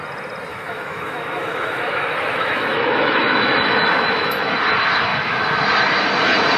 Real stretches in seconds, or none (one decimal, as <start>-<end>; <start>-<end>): 0.0-0.5; 4.5-5.1; 5.6-6.6